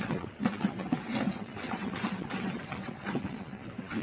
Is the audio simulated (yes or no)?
yes